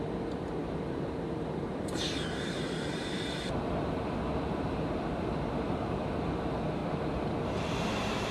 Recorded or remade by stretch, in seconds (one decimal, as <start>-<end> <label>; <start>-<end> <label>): 0.0-6.8 remade; 6.8-7.6 recorded; 7.6-8.3 remade